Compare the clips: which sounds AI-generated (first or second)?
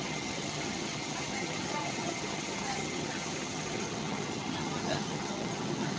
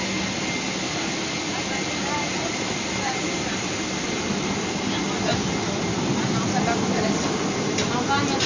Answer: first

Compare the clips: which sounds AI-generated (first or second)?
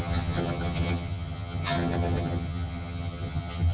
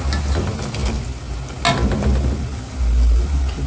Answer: first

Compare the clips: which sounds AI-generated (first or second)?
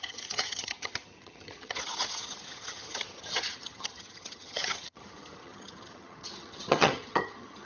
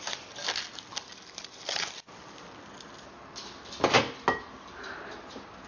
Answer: first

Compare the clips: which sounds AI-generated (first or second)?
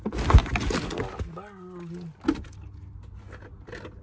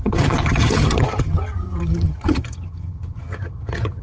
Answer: second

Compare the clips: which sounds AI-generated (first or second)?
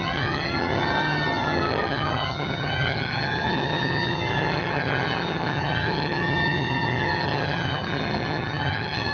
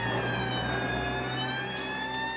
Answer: first